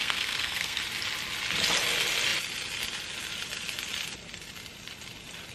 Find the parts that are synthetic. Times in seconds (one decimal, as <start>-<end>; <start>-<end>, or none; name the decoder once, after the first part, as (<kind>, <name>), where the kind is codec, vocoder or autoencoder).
0.0-0.8 (codec, SNAC)